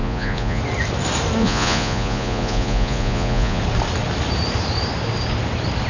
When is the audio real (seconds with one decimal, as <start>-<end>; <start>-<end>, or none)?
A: 0.6-1.4; 3.6-5.9